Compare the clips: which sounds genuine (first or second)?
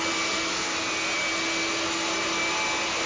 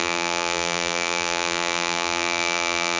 first